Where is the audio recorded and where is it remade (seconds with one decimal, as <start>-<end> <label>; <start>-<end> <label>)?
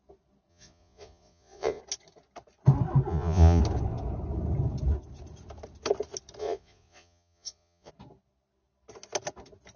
0.0-0.5 recorded; 0.5-1.8 remade; 1.8-3.1 recorded; 3.1-3.6 remade; 3.6-6.4 recorded; 6.4-7.9 remade; 7.9-9.8 recorded